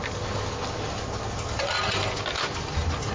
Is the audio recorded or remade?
recorded